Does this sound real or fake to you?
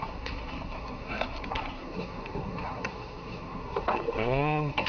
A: fake